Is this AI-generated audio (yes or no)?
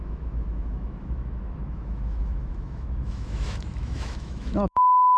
yes